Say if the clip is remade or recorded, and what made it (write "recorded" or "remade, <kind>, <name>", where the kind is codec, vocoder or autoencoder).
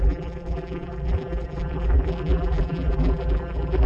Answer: remade, vocoder, BigVGAN v2